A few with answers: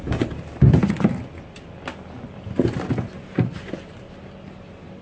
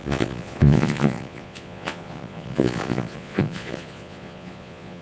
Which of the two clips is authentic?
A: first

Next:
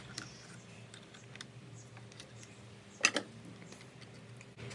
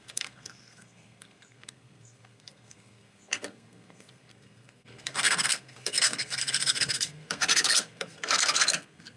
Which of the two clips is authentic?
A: first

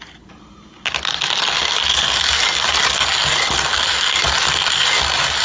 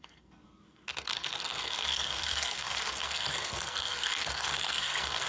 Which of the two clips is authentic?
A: first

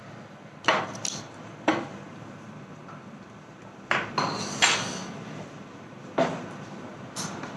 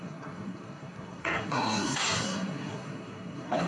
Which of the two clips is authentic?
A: first